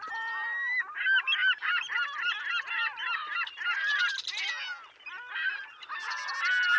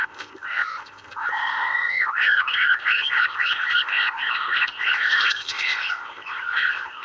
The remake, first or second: second